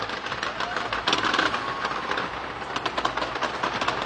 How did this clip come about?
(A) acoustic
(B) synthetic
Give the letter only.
A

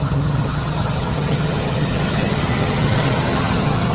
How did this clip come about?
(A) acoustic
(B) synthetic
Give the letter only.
B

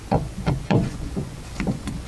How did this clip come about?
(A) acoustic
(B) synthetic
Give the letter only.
B